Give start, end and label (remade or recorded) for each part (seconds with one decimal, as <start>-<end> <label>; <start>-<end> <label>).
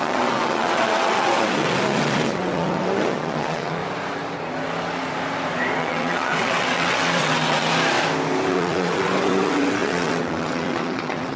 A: 0.0-3.8 remade; 3.8-5.8 recorded; 5.8-7.7 remade; 7.7-8.5 recorded; 8.5-11.4 remade